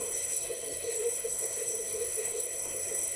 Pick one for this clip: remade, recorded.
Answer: remade